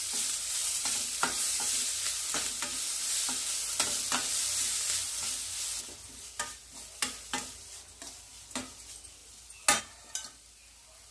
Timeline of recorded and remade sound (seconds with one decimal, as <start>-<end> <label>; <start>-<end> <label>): 0.0-11.1 recorded